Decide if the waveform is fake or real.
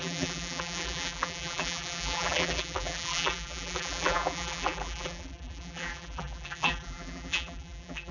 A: fake